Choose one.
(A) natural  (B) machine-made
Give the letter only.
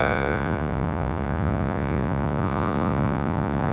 B